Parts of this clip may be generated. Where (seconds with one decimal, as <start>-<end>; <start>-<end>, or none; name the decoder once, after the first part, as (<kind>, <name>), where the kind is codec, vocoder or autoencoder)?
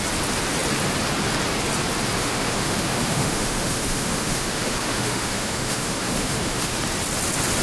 2.2-6.8 (autoencoder, DAC-VAE)